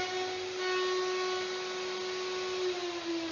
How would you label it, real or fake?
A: real